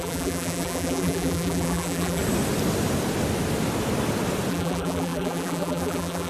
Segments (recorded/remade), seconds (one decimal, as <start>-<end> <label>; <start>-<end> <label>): 0.0-2.2 remade; 2.2-4.5 recorded; 4.5-6.3 remade